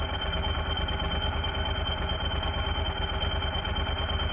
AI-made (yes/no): no